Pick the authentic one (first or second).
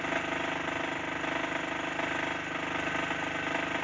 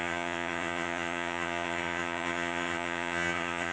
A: first